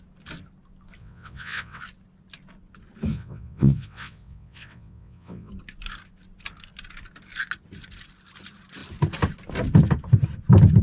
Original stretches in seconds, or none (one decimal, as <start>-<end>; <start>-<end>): 0.0-1.0; 1.8-3.1; 5.5-10.8